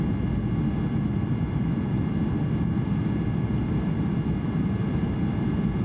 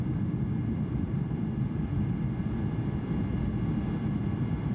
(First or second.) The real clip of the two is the first